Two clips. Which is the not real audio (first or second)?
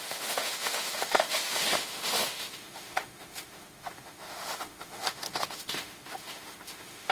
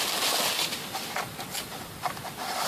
first